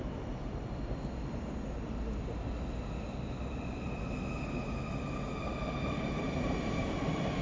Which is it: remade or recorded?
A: recorded